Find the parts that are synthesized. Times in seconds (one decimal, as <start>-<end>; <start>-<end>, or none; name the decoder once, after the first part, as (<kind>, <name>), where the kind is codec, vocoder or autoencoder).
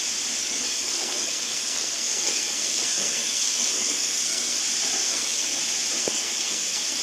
0.4-4.6 (codec, SNAC); 5.0-5.6; 6.0-7.0